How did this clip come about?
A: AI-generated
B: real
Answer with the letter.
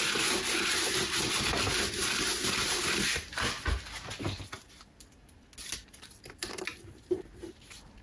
B